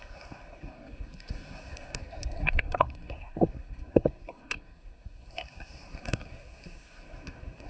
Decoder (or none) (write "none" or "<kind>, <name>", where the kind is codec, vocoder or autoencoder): codec, SNAC